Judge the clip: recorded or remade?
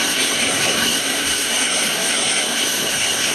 remade